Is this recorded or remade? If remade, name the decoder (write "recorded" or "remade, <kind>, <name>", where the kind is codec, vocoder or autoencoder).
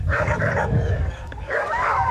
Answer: remade, codec, DAC